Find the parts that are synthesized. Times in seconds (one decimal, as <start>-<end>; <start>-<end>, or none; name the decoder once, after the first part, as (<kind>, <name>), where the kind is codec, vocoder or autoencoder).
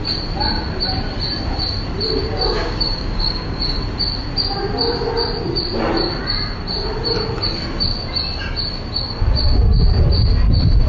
2.2-3.6 (codec, DAC)